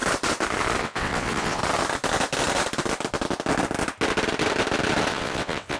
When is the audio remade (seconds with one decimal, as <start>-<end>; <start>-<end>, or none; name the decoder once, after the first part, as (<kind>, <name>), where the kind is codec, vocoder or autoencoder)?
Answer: 0.8-1.6 (vocoder, WaveNeXt); 5.1-5.8